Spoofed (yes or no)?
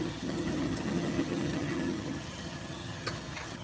yes